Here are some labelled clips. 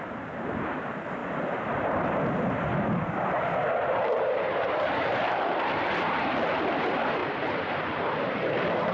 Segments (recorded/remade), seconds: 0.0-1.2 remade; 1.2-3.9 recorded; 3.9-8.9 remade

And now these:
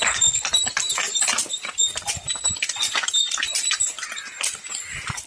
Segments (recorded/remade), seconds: 0.0-5.3 recorded

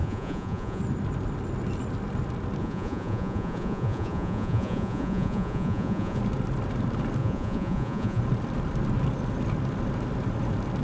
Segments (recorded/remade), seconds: 0.0-0.8 remade; 0.8-2.6 recorded; 2.6-6.2 remade; 6.2-7.2 recorded; 7.2-8.2 remade; 8.2-10.8 recorded

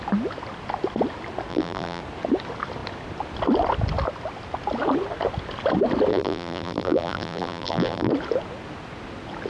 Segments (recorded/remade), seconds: 0.0-1.5 recorded; 1.5-2.0 remade; 2.0-6.1 recorded; 6.1-8.1 remade; 8.1-9.5 recorded